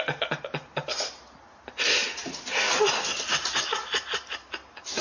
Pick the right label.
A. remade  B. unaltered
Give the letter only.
B